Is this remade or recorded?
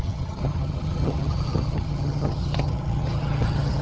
remade